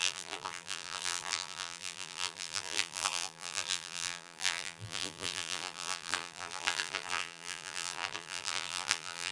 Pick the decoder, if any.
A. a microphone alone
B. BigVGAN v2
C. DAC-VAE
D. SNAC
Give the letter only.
B